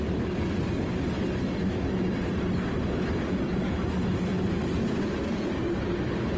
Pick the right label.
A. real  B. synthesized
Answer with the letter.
A